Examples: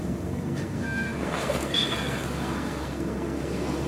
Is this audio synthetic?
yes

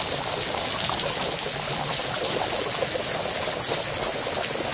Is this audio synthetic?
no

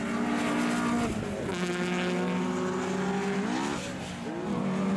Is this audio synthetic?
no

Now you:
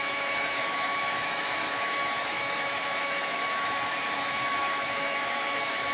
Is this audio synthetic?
yes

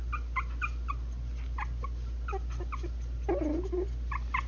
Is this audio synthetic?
no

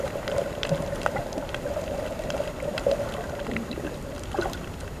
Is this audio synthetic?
no